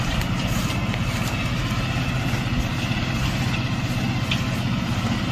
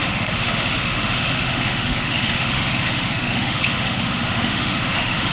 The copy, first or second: second